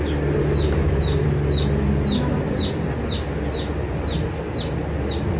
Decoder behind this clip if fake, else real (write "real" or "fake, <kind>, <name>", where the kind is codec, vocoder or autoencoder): real